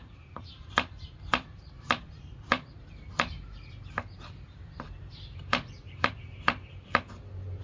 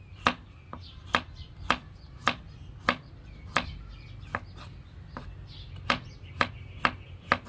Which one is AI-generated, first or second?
first